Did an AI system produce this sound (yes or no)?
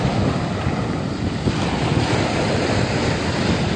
no